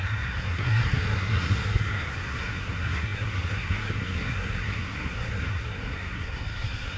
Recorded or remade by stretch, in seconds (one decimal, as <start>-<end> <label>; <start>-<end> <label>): 0.0-7.0 remade